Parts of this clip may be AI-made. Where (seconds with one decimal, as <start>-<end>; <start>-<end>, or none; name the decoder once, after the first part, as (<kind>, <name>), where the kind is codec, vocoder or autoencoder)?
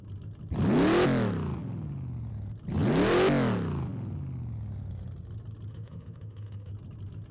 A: 5.7-6.7 (autoencoder, DAC-VAE)